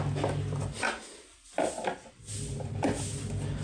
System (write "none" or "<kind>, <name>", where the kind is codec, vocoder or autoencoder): none